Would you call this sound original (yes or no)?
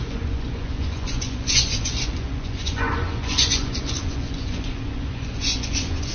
no